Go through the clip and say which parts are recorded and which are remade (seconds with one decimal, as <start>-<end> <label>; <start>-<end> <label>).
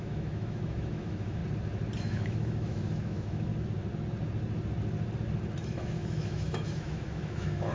0.0-1.4 remade; 1.4-2.0 recorded; 2.0-3.5 remade; 3.5-5.6 recorded; 5.6-7.7 remade